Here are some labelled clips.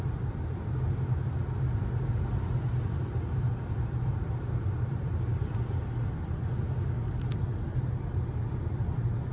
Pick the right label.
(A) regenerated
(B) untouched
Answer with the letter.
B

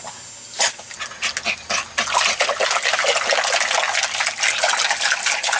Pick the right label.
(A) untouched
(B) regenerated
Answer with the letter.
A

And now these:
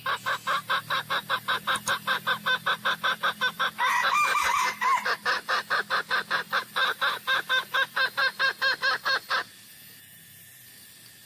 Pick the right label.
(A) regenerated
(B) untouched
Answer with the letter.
B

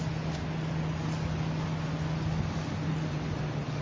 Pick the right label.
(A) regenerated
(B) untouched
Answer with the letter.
B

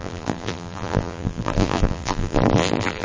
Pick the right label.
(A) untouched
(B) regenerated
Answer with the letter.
B